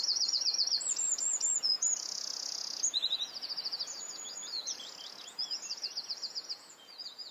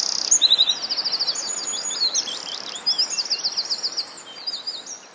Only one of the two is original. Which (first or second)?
second